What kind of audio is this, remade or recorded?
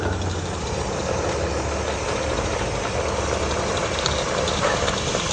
recorded